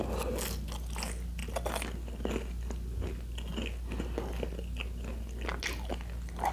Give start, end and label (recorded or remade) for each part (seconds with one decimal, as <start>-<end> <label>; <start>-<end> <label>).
0.0-6.5 recorded